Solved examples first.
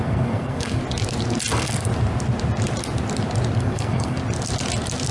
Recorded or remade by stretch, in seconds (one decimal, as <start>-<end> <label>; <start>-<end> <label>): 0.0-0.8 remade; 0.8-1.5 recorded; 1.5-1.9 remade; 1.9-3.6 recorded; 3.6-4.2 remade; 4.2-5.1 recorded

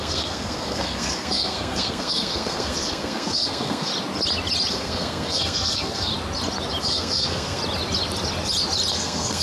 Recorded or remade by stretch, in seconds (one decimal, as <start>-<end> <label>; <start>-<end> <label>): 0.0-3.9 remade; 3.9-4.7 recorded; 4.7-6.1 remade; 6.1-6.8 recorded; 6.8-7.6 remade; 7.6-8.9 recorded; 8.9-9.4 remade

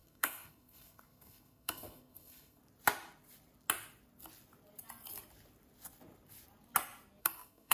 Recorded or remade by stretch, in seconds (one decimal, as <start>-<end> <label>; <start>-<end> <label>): 0.0-2.6 remade; 2.6-7.2 recorded; 7.2-7.7 remade